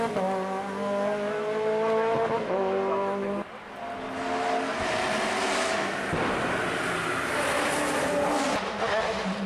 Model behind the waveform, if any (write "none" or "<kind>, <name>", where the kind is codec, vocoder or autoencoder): none